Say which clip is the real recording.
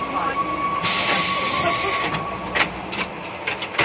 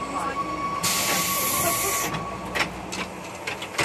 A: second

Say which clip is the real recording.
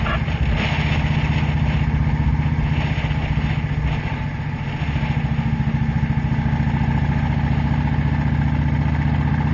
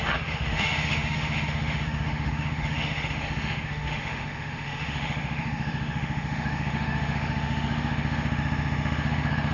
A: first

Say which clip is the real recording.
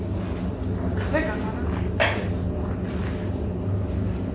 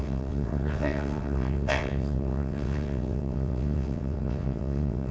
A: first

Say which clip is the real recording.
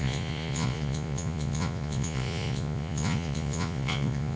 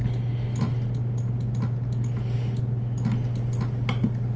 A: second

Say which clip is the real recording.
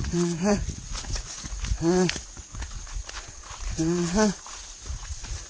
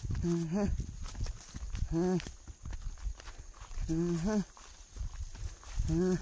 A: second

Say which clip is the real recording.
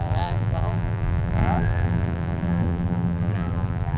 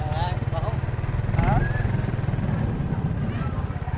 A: second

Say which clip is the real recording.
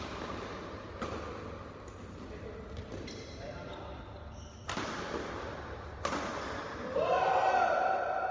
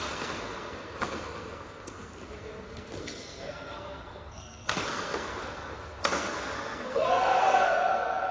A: first